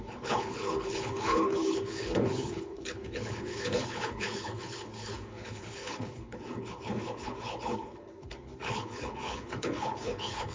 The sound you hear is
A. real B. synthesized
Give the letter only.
B